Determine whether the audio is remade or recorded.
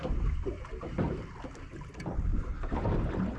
recorded